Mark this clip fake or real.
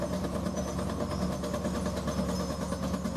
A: real